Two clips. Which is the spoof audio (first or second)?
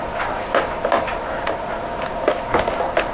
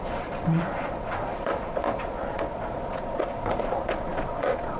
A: second